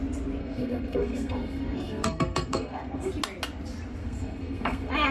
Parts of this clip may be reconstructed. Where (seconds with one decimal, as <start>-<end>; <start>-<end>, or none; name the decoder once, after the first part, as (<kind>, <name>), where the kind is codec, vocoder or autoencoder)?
0.4-3.1 (codec, SNAC); 4.0-5.1